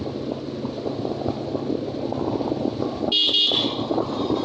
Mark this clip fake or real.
real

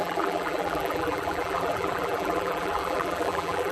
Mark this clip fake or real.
fake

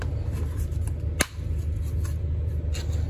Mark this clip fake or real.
real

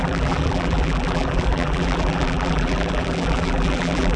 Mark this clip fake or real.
fake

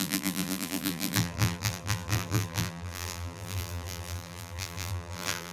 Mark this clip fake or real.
fake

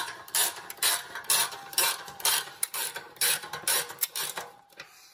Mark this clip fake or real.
fake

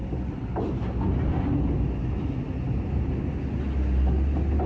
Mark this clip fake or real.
real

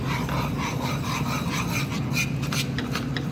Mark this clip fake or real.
real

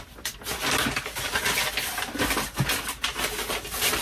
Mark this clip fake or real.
real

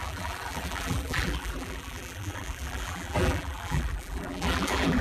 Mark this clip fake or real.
fake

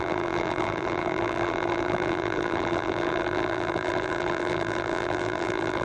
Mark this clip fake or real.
fake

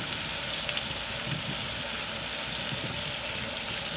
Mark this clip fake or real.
real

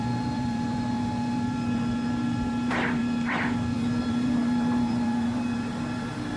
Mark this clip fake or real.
fake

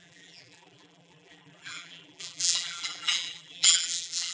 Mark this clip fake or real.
fake